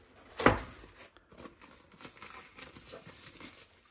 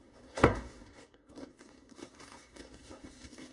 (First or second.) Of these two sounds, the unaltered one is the first